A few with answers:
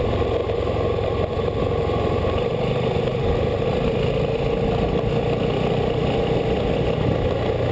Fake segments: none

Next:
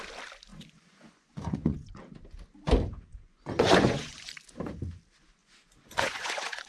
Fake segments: 0.5-1.9 (vocoder, Vocos); 3.1-4.3; 5.4-6.7

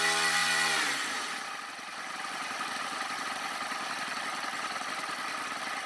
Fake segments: 0.4-1.4 (vocoder, BigVGAN v2); 1.9-2.5

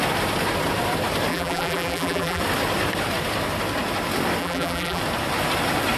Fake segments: 1.3-2.4 (vocoder, BigVGAN v2); 4.4-5.0

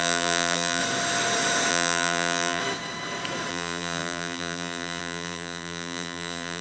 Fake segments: 0.0-0.8 (vocoder, BigVGAN v2); 1.7-2.6; 3.5-6.6

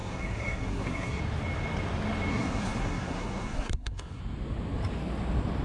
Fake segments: 0.0-1.2 (codec, SNAC); 2.3-4.2

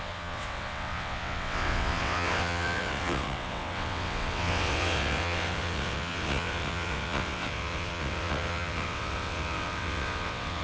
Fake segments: 0.0-10.6 (vocoder, WaveNeXt)